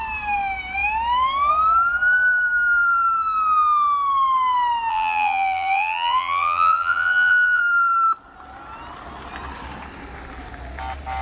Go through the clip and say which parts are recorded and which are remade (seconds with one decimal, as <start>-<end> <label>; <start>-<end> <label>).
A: 0.0-4.9 recorded; 4.9-7.6 remade; 7.6-11.2 recorded